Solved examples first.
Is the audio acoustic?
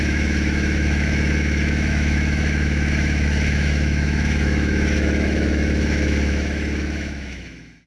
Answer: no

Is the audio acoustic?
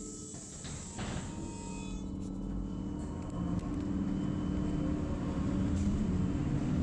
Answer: yes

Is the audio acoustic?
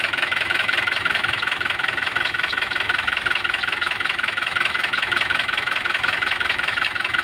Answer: no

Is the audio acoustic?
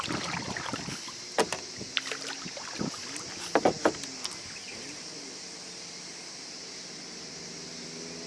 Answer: yes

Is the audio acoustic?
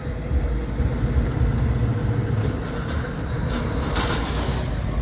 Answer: yes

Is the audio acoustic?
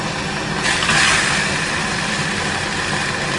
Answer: yes